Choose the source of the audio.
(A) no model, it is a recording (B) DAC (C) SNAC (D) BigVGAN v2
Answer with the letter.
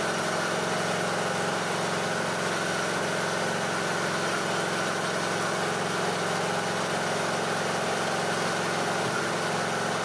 A